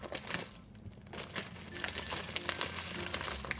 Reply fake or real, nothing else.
real